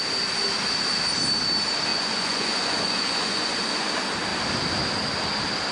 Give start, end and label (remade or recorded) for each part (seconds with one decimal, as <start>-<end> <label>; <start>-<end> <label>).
0.0-1.9 recorded; 1.9-3.9 remade; 3.9-5.7 recorded